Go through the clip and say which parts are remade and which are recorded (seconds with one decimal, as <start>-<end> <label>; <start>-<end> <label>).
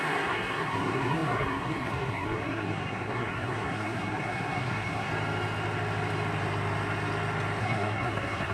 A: 0.0-5.1 remade; 5.1-7.6 recorded; 7.6-8.5 remade